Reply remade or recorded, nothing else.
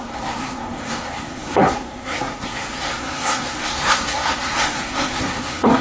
remade